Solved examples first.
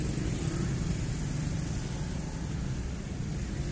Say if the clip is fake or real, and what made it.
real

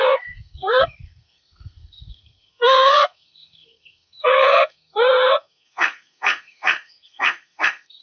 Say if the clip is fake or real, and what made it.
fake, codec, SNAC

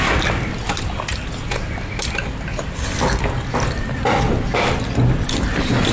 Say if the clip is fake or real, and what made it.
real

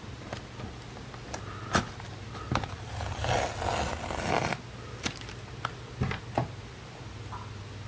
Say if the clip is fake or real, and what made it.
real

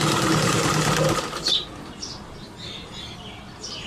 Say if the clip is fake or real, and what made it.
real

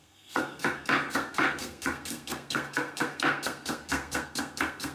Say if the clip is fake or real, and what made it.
fake, codec, SNAC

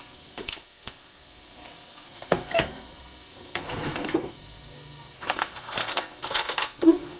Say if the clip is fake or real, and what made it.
fake, codec, SNAC